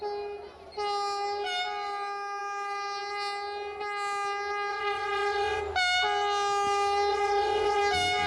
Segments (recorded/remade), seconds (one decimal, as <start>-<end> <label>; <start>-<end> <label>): 0.0-4.7 recorded; 4.7-5.6 remade; 5.6-7.1 recorded; 7.1-7.8 remade; 7.8-8.3 recorded